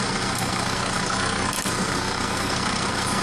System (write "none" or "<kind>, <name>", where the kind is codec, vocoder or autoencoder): codec, SNAC